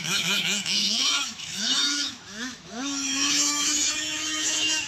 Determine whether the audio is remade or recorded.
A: remade